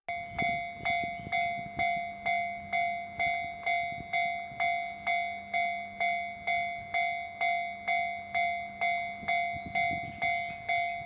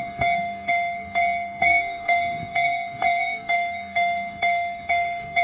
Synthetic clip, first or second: second